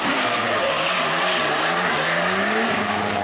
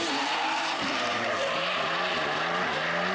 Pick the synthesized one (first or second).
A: first